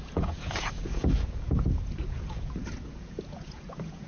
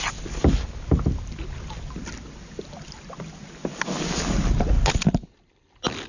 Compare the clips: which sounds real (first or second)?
second